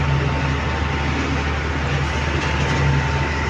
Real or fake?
real